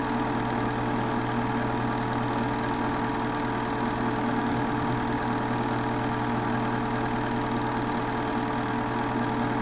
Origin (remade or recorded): recorded